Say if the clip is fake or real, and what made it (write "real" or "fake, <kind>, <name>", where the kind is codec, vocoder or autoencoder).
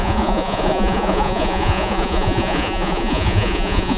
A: fake, vocoder, Vocos